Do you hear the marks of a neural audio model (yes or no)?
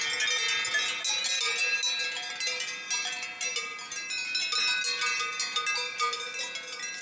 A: no